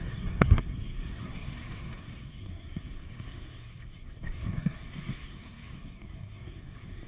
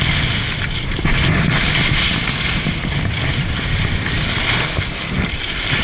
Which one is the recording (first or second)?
second